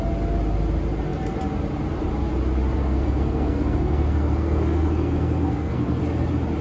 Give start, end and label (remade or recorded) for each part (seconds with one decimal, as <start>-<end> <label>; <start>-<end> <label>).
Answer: 0.0-2.8 recorded; 2.8-6.0 remade; 6.0-6.6 recorded